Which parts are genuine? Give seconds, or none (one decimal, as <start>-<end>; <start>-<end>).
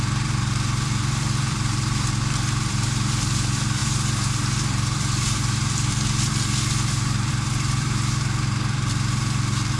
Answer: none